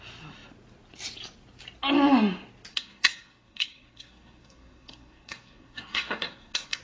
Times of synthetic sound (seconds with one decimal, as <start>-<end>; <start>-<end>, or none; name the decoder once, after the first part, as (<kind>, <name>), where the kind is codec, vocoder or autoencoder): 2.7-6.8 (codec, SNAC)